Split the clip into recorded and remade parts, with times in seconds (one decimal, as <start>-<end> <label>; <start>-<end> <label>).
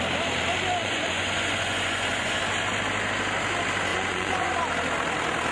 0.0-0.8 recorded; 0.8-2.4 remade; 2.4-3.9 recorded; 3.9-4.5 remade; 4.5-5.5 recorded